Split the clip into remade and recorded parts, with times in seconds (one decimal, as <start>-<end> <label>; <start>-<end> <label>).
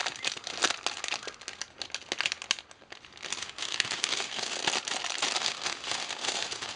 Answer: 0.0-3.4 recorded; 3.4-4.6 remade; 4.6-5.4 recorded; 5.4-6.8 remade